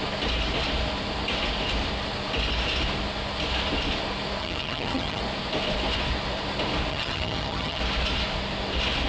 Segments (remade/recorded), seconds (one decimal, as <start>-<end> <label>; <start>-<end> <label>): 0.0-4.4 recorded; 4.4-5.2 remade; 5.2-6.9 recorded; 6.9-7.8 remade; 7.8-9.1 recorded